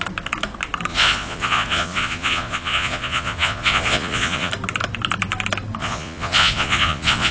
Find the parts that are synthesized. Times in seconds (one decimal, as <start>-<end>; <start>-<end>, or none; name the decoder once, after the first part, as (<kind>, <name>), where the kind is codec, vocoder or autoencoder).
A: 0.9-4.5 (vocoder, Vocos); 5.8-7.3